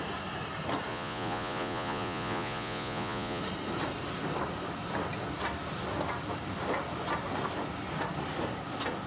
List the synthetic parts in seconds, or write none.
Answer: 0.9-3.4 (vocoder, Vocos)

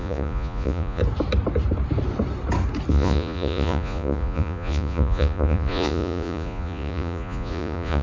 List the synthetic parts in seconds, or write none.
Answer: 0.0-1.0 (vocoder, Vocos); 2.9-8.0

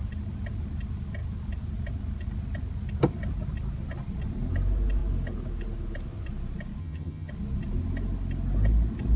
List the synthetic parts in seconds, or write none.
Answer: 6.8-7.3 (vocoder, HiFi-GAN)

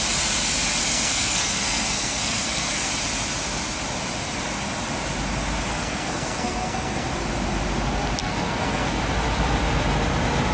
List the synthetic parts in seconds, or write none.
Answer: 0.8-2.9 (codec, SNAC); 5.7-7.1; 8.2-9.0

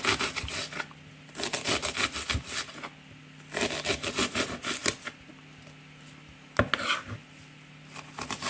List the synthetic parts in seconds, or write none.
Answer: none

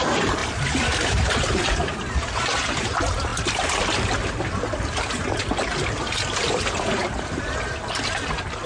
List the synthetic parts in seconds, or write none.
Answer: 0.4-2.4 (vocoder, BigVGAN v2)

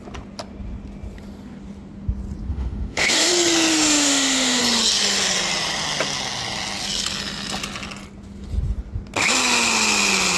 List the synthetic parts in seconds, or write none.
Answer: 2.5-3.3 (autoencoder, DAC-VAE); 3.7-4.6